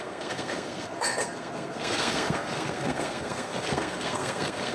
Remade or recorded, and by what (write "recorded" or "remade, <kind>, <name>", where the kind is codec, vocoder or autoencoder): remade, codec, SNAC